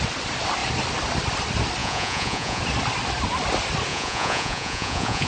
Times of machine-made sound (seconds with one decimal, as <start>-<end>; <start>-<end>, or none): 1.8-2.6; 3.9-5.3